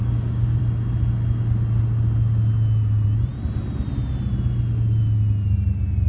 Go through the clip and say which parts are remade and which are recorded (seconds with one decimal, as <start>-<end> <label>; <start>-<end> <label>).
0.0-0.6 remade; 0.6-6.1 recorded